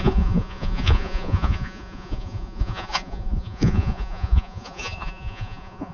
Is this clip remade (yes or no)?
yes